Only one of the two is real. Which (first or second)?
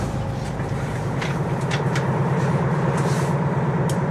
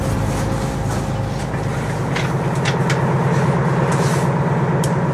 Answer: second